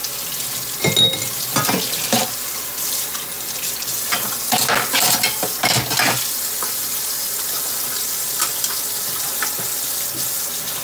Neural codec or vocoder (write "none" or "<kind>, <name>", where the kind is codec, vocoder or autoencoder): none